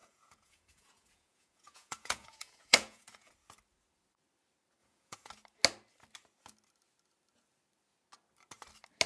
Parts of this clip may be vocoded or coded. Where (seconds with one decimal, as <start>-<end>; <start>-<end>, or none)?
0.0-3.3; 4.8-5.3